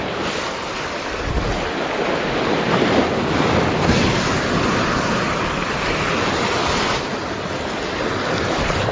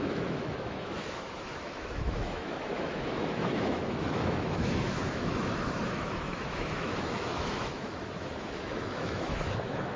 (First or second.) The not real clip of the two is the second